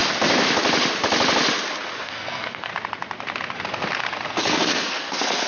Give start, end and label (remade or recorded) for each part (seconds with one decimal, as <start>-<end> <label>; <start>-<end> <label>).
0.0-2.0 recorded; 2.0-2.7 remade; 2.7-4.3 recorded; 4.3-5.5 remade